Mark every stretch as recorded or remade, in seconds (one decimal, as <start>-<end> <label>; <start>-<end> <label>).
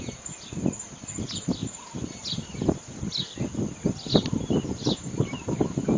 0.0-6.0 recorded